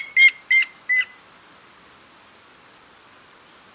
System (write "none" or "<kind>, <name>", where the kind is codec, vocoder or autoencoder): none